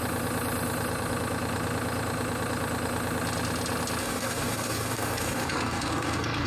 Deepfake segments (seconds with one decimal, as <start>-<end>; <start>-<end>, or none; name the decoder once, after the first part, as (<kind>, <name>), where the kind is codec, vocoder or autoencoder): 4.0-6.5 (codec, DAC)